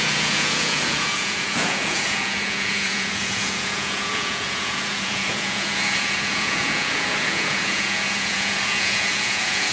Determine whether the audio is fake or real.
fake